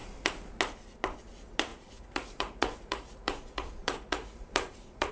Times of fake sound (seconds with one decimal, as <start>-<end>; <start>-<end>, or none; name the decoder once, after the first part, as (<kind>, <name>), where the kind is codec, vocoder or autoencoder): 1.7-5.1 (vocoder, Vocos)